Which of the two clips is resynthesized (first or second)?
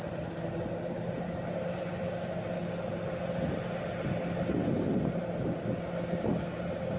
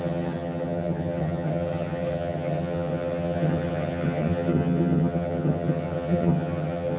second